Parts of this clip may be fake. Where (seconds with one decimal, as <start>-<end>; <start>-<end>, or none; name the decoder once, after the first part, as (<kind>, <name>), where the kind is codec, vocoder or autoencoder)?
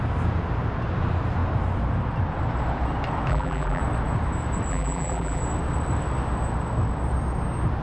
3.3-3.8 (vocoder, BigVGAN v2); 4.7-5.4